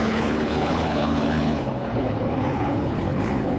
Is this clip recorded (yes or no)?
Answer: no